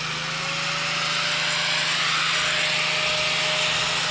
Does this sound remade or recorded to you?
recorded